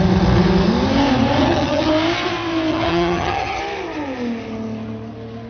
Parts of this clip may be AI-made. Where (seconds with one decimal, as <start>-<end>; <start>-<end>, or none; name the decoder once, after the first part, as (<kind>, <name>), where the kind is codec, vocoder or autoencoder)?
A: 1.4-1.9 (vocoder, HiFi-GAN); 2.7-3.6